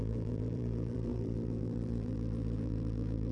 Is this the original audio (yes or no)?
no